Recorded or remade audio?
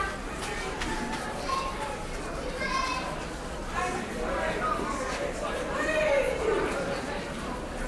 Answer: recorded